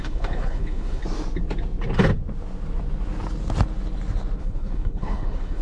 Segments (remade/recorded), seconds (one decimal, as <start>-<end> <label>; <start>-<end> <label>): 0.0-1.0 remade; 1.0-4.4 recorded; 4.4-5.6 remade